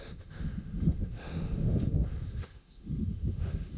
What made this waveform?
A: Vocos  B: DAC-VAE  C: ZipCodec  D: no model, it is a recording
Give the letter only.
B